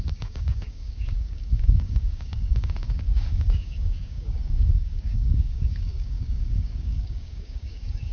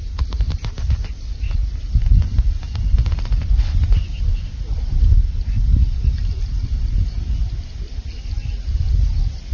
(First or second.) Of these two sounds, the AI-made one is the first